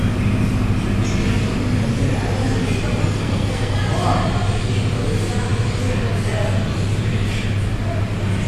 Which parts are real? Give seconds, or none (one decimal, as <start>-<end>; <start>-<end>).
0.0-3.0; 3.8-8.5